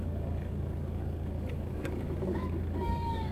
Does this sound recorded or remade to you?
remade